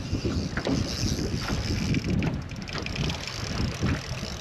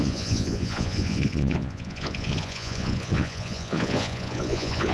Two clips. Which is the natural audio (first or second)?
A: first